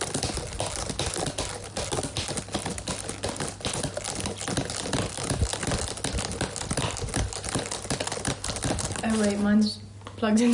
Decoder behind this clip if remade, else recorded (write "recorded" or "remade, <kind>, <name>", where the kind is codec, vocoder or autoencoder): recorded